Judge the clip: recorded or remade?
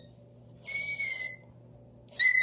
recorded